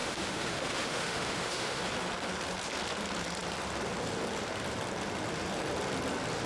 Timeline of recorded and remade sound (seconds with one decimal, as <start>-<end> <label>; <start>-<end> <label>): 0.0-1.8 remade; 1.8-6.5 recorded